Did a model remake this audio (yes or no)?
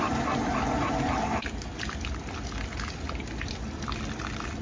no